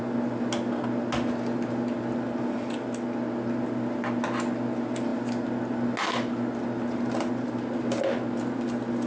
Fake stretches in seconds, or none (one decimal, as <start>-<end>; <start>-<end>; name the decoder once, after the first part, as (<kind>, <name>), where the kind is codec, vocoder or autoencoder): none